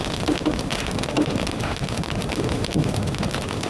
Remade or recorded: remade